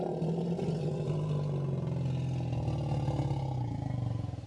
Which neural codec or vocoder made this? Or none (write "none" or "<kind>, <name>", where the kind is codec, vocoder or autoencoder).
none